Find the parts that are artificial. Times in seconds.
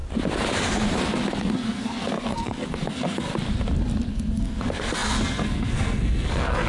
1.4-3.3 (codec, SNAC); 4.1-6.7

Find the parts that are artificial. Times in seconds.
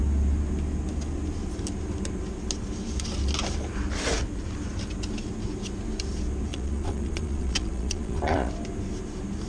6.5-8.5 (vocoder, Vocos)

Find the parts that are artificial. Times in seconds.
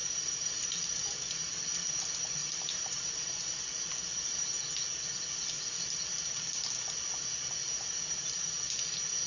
0.0-1.6 (vocoder, BigVGAN v2); 2.4-3.6; 7.6-8.6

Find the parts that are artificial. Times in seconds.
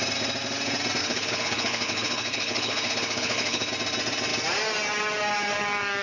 1.0-3.7 (codec, HILCodec)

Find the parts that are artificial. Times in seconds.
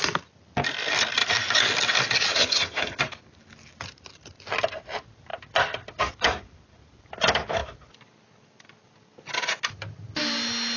2.3-3.0 (vocoder, HiFi-GAN)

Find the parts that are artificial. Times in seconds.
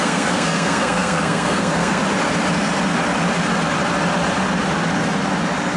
0.0-2.0 (codec, SNAC)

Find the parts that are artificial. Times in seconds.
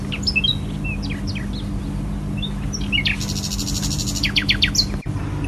none